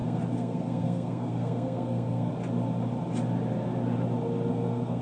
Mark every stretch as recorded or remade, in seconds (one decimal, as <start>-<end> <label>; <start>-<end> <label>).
0.0-2.3 remade; 2.3-4.5 recorded; 4.5-5.0 remade